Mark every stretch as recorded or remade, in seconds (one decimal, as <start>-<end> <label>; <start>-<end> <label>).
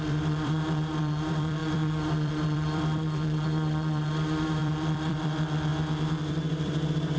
0.0-5.7 remade; 5.7-6.2 recorded; 6.2-7.2 remade